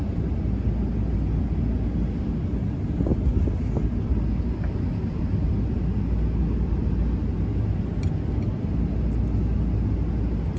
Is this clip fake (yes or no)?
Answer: no